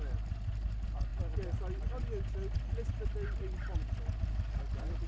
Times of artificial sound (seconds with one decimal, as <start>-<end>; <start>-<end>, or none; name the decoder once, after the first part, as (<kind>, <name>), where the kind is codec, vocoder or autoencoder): none